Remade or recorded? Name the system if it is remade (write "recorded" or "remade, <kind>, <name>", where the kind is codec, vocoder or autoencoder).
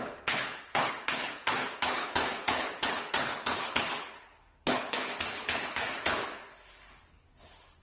remade, codec, HILCodec